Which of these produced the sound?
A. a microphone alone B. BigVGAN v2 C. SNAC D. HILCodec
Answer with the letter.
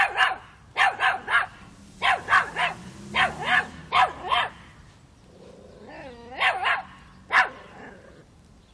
A